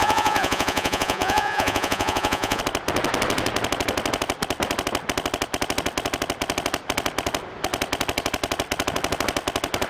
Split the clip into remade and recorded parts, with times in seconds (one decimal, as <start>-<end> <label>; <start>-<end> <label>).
0.0-2.6 remade; 2.6-9.9 recorded